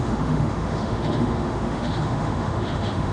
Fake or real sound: fake